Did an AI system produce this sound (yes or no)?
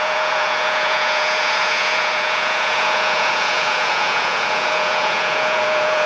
yes